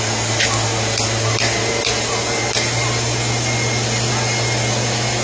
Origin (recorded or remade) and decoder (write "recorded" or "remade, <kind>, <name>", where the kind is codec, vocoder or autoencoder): recorded